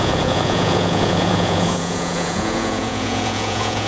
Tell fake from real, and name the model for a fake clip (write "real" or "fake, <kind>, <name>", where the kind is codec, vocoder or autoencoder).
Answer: fake, vocoder, Vocos